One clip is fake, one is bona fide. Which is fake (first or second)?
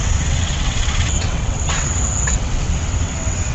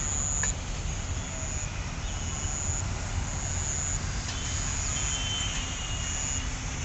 first